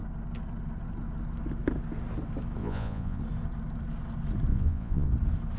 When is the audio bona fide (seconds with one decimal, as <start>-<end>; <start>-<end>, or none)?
0.0-2.6; 3.2-4.5; 5.1-5.6